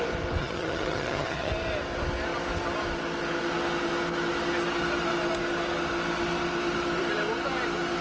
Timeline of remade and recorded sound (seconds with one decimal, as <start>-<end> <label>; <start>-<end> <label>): 0.0-0.4 recorded; 0.4-1.5 remade; 1.5-8.0 recorded